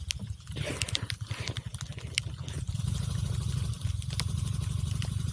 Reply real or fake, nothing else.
real